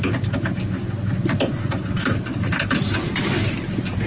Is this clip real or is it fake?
real